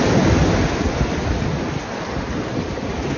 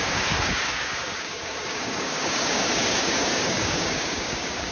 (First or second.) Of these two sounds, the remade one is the second